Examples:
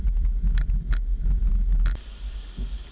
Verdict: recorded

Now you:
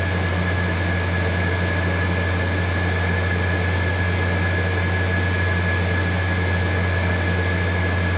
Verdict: recorded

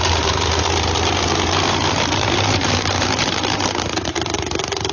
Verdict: remade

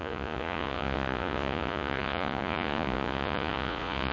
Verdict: remade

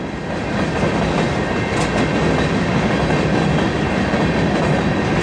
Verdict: recorded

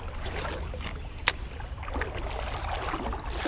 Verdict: recorded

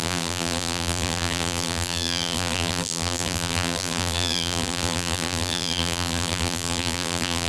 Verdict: remade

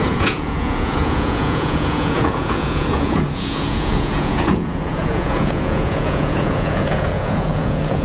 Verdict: remade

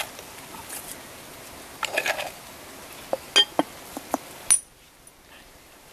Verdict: recorded